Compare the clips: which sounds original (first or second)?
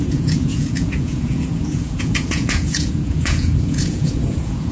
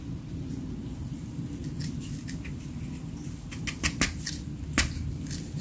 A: second